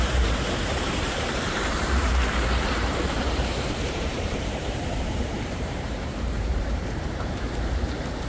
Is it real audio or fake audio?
fake